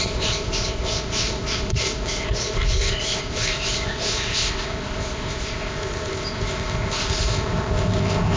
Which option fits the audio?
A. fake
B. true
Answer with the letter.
A